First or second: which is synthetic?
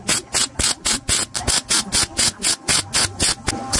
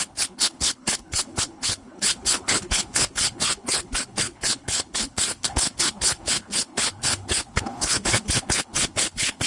second